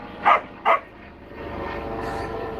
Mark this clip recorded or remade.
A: recorded